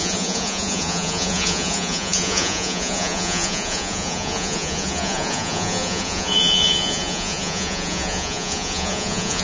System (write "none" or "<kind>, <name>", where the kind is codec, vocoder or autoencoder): vocoder, Vocos